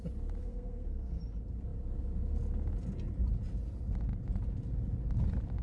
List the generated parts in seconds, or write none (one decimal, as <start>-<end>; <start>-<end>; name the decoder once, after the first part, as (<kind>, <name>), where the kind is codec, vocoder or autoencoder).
0.4-1.2 (codec, SNAC)